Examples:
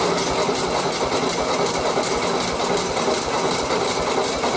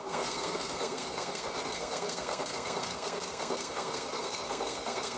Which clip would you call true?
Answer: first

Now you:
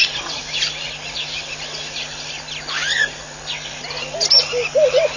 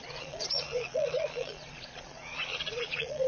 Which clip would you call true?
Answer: first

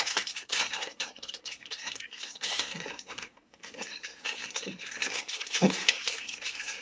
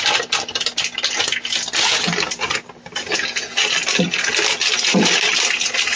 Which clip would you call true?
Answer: second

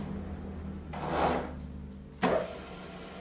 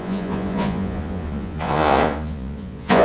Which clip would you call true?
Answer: first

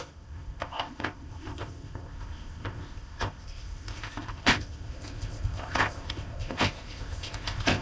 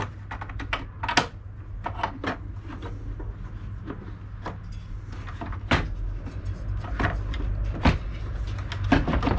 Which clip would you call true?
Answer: second